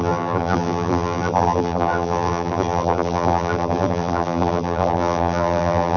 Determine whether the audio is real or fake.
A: fake